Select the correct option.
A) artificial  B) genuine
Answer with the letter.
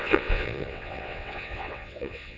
A